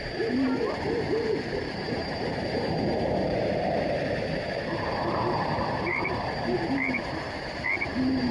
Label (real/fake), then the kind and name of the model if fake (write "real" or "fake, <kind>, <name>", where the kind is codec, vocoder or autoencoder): fake, vocoder, BigVGAN v2